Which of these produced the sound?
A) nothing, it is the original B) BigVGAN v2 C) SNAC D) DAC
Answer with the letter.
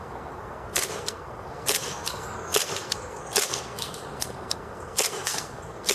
C